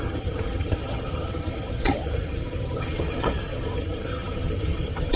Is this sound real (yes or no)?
no